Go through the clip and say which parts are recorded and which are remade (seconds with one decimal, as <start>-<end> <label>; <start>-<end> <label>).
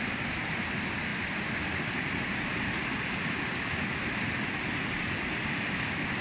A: 0.0-6.2 recorded